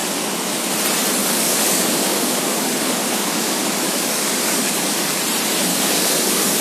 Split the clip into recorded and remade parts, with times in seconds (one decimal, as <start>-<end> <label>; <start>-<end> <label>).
0.0-0.7 remade; 0.7-1.2 recorded; 1.2-5.2 remade; 5.2-5.7 recorded; 5.7-6.6 remade